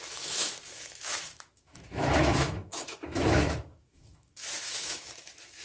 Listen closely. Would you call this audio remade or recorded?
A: remade